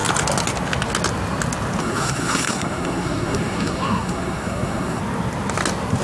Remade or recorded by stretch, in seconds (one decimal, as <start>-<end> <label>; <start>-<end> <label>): 0.0-1.8 recorded; 1.8-5.0 remade; 5.0-6.0 recorded